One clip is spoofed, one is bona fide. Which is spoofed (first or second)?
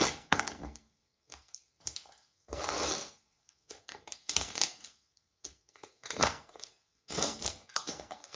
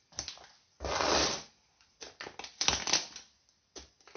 first